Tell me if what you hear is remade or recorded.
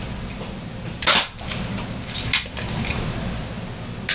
recorded